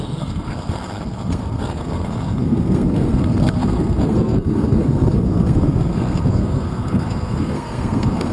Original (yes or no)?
no